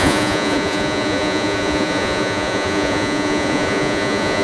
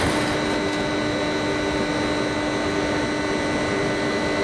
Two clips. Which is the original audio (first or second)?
second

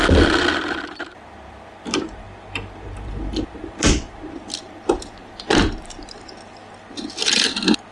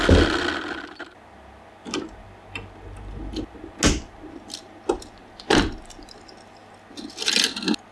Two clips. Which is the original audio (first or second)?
second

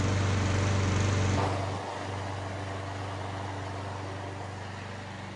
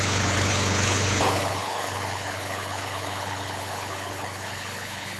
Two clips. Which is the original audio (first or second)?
first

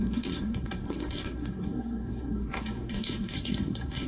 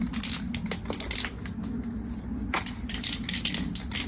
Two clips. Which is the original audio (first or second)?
second